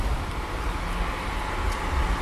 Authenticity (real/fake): real